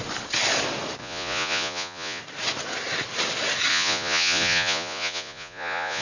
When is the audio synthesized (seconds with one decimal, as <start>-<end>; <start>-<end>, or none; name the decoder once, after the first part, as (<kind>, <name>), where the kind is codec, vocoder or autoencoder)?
1.0-2.2 (vocoder, Vocos); 3.7-6.0